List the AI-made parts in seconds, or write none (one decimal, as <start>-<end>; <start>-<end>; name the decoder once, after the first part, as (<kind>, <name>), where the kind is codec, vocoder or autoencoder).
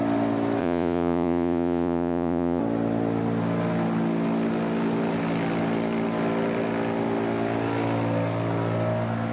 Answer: 0.6-2.6 (vocoder, Vocos)